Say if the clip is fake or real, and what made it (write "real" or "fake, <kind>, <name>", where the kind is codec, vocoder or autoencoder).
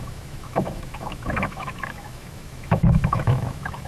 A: fake, autoencoder, DAC-VAE